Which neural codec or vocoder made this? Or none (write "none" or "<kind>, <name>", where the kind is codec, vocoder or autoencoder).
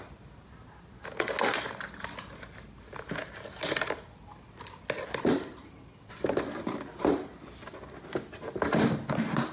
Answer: none